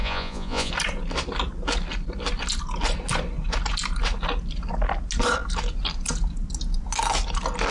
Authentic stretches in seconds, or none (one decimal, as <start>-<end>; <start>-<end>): 0.7-7.7